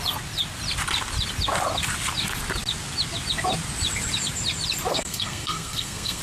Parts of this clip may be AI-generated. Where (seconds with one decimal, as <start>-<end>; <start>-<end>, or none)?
4.9-6.2